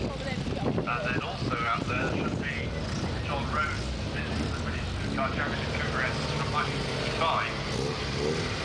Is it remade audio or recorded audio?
recorded